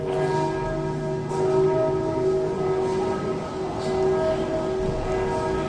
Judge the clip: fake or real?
real